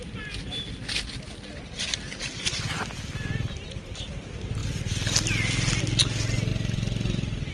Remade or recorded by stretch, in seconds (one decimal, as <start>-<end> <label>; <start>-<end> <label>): 0.0-7.5 recorded